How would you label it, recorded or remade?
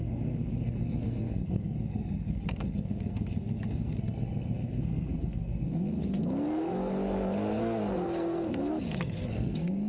remade